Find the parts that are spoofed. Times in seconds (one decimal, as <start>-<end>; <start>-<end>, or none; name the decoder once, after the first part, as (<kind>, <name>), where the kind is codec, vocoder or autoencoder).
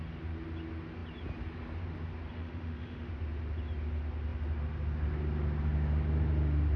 2.3-3.1 (autoencoder, DAC-VAE)